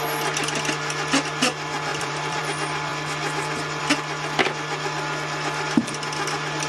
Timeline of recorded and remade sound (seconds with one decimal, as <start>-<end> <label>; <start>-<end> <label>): 0.0-1.9 recorded; 1.9-2.4 remade; 2.4-6.7 recorded